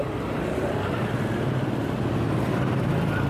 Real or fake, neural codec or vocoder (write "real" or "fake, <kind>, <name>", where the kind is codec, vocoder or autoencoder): real